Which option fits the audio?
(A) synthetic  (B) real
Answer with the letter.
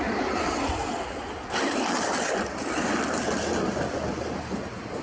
B